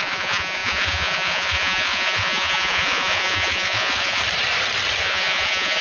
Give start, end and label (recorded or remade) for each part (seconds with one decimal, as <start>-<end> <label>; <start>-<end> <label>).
0.0-4.2 remade; 4.2-5.0 recorded; 5.0-5.8 remade